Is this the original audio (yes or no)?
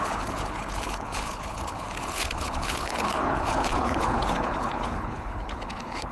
no